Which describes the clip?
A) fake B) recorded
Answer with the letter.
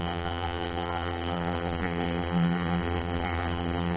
A